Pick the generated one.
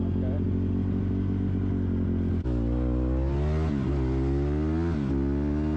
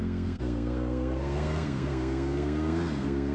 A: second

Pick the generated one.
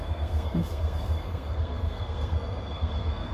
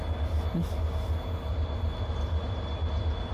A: first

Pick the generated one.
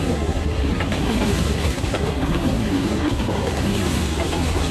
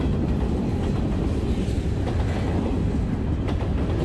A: first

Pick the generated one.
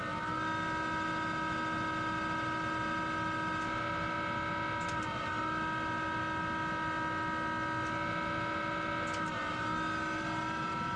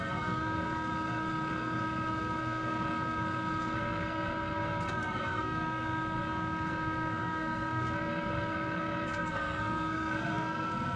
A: second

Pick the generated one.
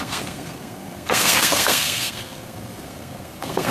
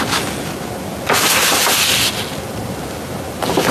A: first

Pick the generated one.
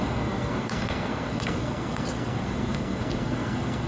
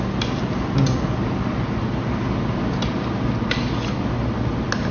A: first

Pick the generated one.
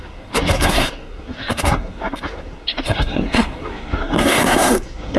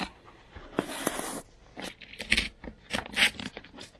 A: first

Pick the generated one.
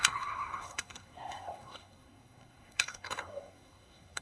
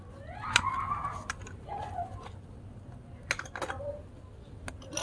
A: first